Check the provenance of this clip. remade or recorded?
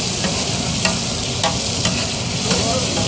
recorded